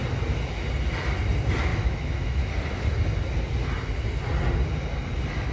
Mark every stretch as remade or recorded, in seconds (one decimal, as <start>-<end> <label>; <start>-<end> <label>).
0.0-1.7 recorded; 1.7-2.4 remade; 2.4-5.5 recorded